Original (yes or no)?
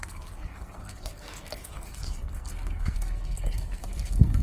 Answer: no